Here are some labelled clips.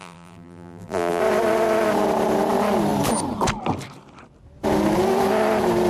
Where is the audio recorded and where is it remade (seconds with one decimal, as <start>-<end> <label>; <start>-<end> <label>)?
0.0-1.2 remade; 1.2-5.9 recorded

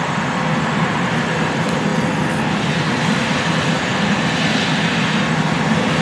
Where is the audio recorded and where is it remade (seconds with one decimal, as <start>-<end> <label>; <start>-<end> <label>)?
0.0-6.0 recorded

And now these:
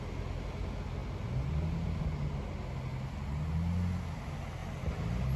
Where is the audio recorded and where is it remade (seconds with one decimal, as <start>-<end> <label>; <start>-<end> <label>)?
0.0-5.4 recorded

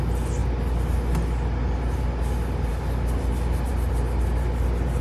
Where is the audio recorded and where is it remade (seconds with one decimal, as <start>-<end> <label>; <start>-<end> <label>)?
0.0-5.0 recorded